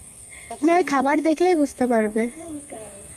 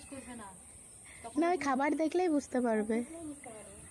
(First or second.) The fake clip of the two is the first